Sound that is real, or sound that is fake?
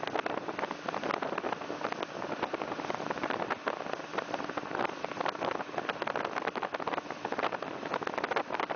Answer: real